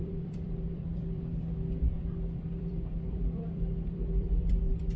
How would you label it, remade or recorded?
remade